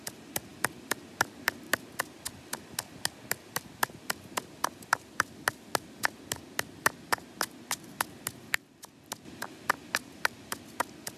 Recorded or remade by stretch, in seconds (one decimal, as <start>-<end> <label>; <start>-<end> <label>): 0.0-11.2 recorded